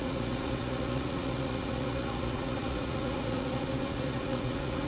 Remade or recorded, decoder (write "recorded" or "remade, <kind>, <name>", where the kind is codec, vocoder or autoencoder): remade, vocoder, Vocos